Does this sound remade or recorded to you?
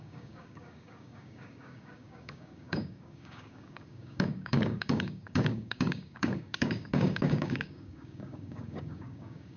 remade